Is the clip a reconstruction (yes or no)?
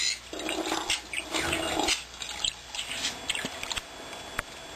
no